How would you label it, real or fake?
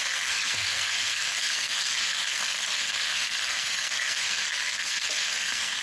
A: fake